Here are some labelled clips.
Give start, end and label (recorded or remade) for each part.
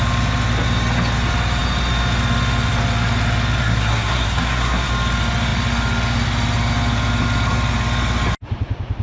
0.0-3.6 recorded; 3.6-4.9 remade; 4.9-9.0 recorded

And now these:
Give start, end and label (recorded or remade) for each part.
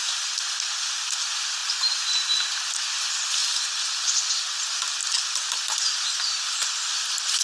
0.0-7.4 recorded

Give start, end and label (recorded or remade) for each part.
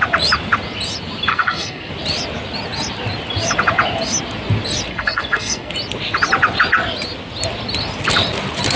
0.0-1.3 recorded; 1.3-1.9 remade; 1.9-4.9 recorded; 4.9-5.7 remade; 5.7-8.8 recorded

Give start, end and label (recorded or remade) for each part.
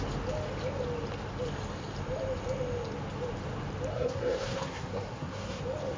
0.0-3.9 recorded; 3.9-5.6 remade; 5.6-6.0 recorded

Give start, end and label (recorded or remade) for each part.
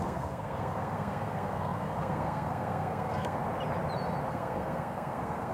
0.0-3.4 remade; 3.4-4.3 recorded; 4.3-5.5 remade